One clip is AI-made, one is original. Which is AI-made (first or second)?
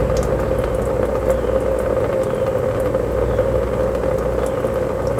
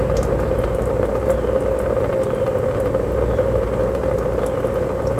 second